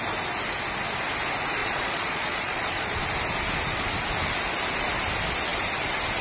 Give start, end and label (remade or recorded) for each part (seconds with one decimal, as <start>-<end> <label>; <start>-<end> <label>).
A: 0.0-1.6 recorded; 1.6-3.0 remade; 3.0-6.2 recorded